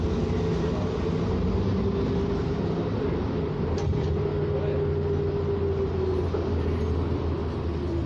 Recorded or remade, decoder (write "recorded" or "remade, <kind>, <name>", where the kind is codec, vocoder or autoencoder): recorded